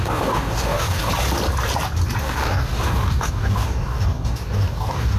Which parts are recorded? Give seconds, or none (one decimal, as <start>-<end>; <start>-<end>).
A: 1.1-2.2